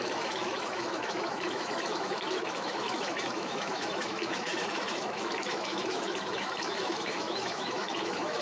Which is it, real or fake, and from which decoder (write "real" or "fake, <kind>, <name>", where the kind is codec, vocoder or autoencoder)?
fake, autoencoder, DAC-VAE